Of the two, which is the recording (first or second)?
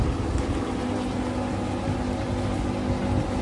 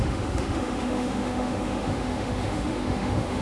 first